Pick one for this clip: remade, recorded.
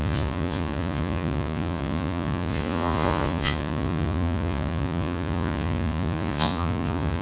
remade